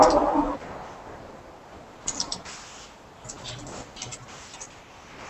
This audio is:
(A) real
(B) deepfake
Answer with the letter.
A